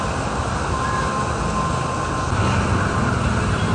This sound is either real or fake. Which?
real